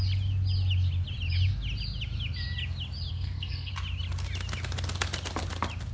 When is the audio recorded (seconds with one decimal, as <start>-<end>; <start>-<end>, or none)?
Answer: 0.0-3.1; 3.7-5.9